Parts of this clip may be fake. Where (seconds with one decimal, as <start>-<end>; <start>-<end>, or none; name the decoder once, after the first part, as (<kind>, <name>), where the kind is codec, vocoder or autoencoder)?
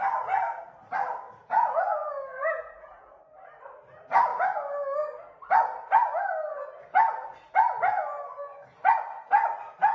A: 1.4-3.2 (vocoder, Vocos)